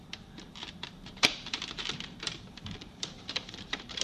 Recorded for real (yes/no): no